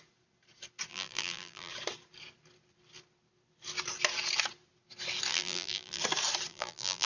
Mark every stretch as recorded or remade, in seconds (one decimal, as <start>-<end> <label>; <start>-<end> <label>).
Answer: 0.0-0.9 recorded; 0.9-1.7 remade; 1.7-5.3 recorded; 5.3-6.0 remade; 6.0-6.5 recorded; 6.5-7.1 remade